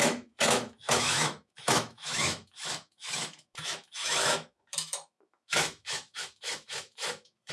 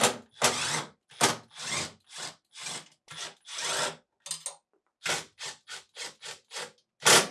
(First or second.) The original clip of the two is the second